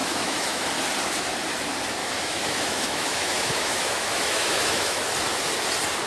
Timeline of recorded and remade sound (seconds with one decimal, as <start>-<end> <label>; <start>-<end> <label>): 0.0-0.7 remade; 0.7-2.0 recorded; 2.0-5.1 remade; 5.1-6.1 recorded